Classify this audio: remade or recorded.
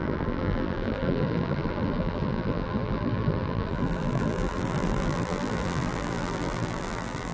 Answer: remade